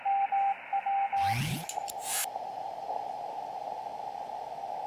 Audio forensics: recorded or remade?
recorded